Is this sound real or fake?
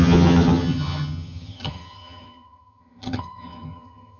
fake